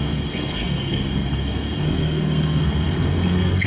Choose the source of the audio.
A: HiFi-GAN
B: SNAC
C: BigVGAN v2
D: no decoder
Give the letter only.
B